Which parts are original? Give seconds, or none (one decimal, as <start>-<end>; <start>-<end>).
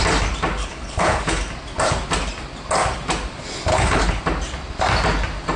0.0-0.6; 1.4-3.7; 4.2-5.6